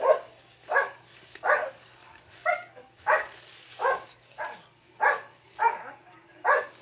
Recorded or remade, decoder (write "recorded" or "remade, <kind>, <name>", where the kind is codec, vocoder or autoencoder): remade, codec, DAC